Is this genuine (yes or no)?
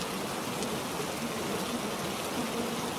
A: yes